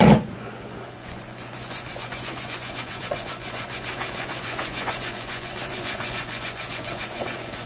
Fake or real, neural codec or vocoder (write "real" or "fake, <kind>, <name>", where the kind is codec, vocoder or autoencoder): fake, vocoder, Vocos